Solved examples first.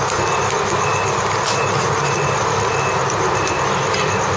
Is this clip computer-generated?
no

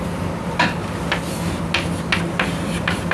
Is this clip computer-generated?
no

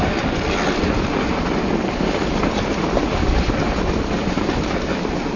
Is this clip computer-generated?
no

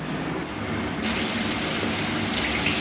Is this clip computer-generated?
no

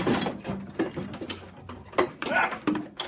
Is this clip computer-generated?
no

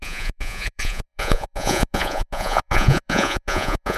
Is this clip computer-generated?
yes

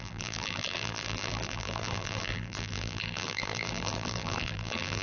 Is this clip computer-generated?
yes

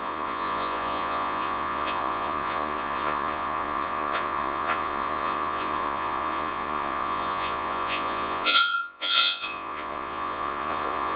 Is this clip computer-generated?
yes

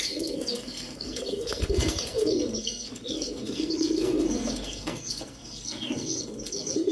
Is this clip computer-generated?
yes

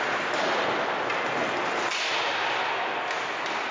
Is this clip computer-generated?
no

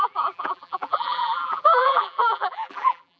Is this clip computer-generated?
yes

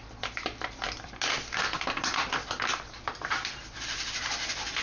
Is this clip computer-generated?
yes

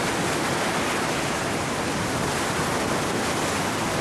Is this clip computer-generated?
no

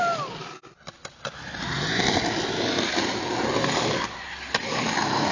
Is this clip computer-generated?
no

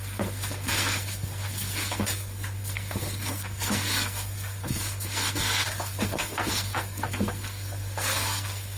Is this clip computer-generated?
yes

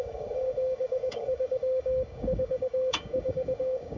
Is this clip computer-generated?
yes